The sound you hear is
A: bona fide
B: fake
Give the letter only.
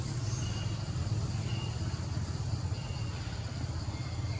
A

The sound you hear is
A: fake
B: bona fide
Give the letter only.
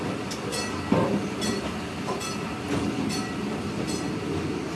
B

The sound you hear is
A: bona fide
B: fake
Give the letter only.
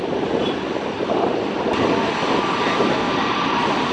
A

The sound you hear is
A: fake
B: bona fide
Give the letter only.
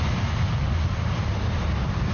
A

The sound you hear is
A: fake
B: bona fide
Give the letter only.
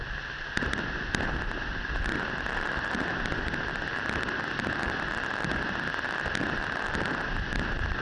B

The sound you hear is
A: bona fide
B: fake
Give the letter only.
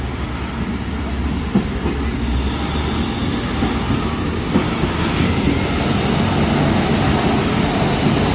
A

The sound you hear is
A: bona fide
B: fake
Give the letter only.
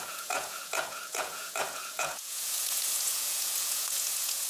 B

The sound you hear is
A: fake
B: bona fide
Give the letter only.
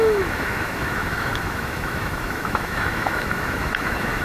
A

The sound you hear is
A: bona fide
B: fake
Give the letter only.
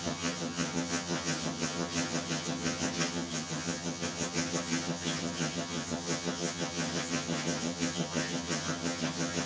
B